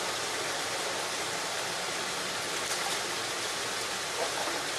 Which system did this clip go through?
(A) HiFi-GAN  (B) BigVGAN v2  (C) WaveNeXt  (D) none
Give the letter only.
B